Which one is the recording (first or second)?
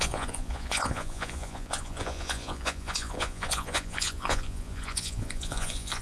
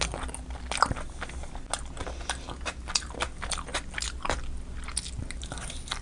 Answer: second